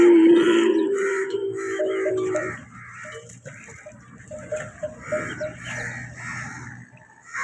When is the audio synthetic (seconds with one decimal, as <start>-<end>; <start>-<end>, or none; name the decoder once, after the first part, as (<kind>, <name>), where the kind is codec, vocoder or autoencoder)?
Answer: 1.1-2.1 (autoencoder, DAC-VAE)